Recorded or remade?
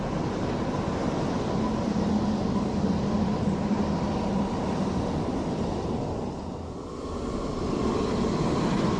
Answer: recorded